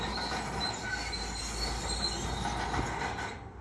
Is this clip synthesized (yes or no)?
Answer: no